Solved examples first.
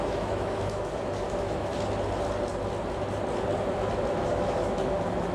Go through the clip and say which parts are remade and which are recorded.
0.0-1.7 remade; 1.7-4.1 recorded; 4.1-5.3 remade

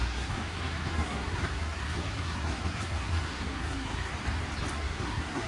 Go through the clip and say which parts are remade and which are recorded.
0.0-4.1 remade; 4.1-4.7 recorded; 4.7-5.5 remade

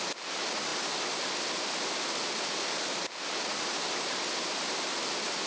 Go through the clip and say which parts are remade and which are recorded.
0.0-5.5 recorded

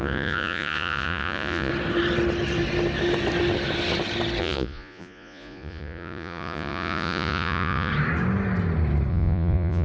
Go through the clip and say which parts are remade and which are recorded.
0.0-1.7 remade; 1.7-4.4 recorded; 4.4-7.9 remade; 7.9-9.1 recorded; 9.1-9.8 remade

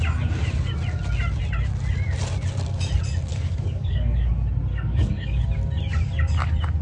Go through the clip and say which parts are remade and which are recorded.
0.0-3.3 recorded; 3.3-4.3 remade; 4.3-4.7 recorded; 4.7-5.4 remade; 5.4-6.8 recorded

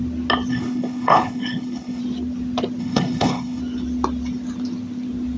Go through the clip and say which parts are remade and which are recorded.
0.0-0.5 recorded; 0.5-2.0 remade; 2.0-2.8 recorded; 2.8-3.6 remade; 3.6-5.4 recorded

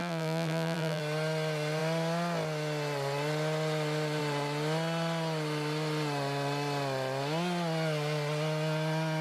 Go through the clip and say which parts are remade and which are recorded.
0.0-1.0 remade; 1.0-9.2 recorded